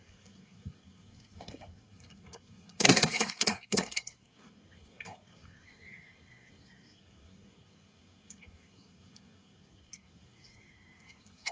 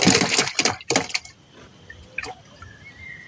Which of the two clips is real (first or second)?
second